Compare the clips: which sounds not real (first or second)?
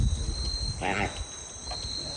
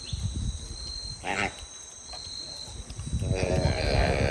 second